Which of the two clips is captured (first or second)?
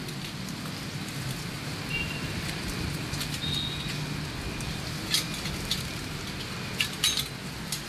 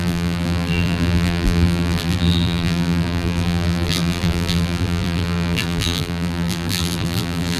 first